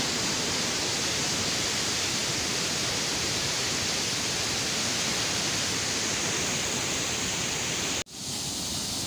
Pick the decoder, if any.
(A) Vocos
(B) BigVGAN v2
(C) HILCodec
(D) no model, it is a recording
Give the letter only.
D